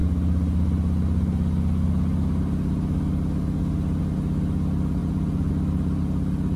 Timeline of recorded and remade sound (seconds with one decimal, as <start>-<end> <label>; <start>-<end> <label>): 0.0-5.0 recorded; 5.0-5.5 remade; 5.5-6.6 recorded